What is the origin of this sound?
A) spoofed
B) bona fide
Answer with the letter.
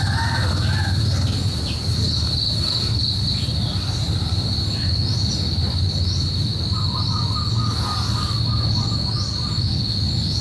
B